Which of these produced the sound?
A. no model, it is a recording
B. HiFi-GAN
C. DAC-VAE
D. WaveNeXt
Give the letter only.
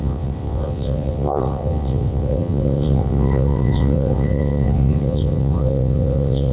D